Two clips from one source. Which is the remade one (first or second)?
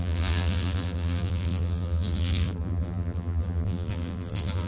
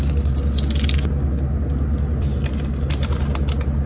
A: first